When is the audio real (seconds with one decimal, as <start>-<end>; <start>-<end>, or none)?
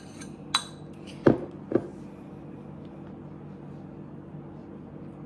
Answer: 0.0-5.3